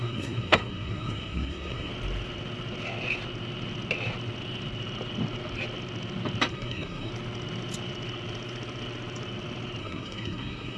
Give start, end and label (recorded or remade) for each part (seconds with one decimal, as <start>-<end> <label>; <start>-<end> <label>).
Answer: 0.0-1.9 remade; 1.9-6.5 recorded; 6.5-7.1 remade; 7.1-9.8 recorded; 9.8-10.8 remade